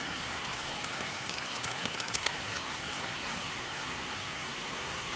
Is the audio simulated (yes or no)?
yes